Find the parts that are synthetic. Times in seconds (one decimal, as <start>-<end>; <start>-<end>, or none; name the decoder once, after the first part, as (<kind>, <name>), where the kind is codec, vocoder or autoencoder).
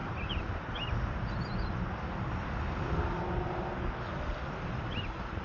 none